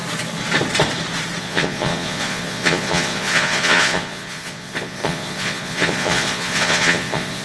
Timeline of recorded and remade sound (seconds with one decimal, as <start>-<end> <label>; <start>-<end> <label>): 0.0-1.4 recorded; 1.4-7.4 remade